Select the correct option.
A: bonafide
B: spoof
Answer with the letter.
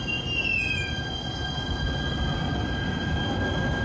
A